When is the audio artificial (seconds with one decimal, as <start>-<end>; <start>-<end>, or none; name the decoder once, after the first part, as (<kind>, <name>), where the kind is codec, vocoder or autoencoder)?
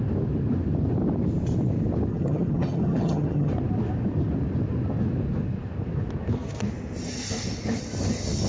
2.1-3.5 (vocoder, HiFi-GAN)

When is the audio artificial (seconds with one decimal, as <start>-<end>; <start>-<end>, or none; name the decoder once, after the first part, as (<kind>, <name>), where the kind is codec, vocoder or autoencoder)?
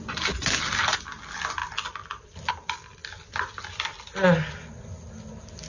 none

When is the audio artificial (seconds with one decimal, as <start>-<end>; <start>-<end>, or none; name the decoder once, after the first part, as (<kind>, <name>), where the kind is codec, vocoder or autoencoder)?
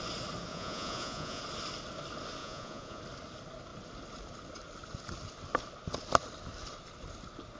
0.5-1.4 (vocoder, Vocos); 2.4-3.0